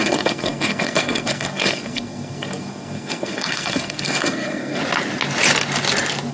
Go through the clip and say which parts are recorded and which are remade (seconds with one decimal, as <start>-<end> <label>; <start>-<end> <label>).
0.0-4.8 remade; 4.8-6.3 recorded